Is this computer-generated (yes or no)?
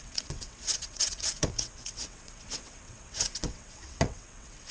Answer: yes